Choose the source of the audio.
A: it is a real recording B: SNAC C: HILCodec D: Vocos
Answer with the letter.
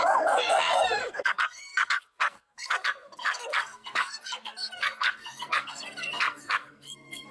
B